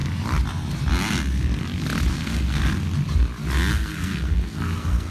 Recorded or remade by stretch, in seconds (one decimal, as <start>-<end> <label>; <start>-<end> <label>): 0.0-2.1 recorded; 2.1-2.6 remade; 2.6-3.7 recorded; 3.7-5.1 remade